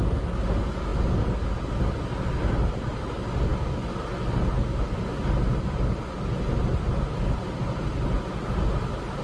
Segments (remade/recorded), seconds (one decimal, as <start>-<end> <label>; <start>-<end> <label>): 0.0-6.7 recorded; 6.7-7.6 remade; 7.6-9.2 recorded